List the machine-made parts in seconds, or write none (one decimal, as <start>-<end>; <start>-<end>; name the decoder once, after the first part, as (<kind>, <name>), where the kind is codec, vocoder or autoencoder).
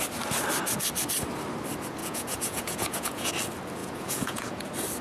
2.0-3.3 (vocoder, Vocos); 3.8-4.6